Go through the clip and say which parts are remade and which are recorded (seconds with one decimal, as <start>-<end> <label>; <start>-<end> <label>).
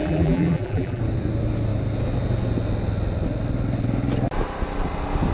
0.0-1.0 remade; 1.0-5.3 recorded